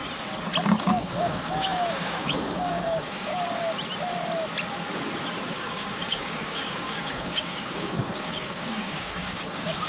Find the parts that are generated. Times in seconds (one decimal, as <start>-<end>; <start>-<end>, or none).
0.8-3.3; 5.5-9.9